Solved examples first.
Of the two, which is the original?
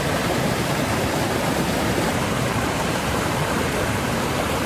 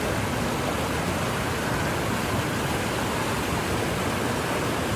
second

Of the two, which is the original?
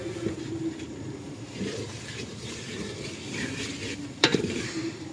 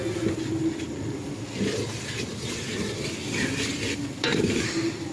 second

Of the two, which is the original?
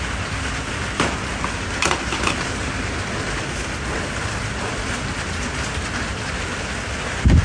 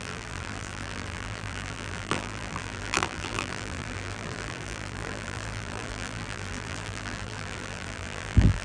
first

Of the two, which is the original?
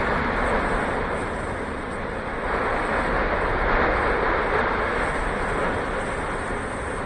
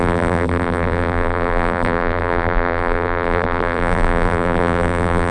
first